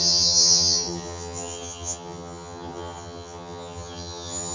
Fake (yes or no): yes